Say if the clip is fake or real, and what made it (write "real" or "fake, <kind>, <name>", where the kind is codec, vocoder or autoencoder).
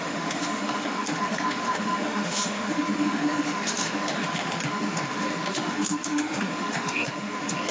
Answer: fake, autoencoder, DAC-VAE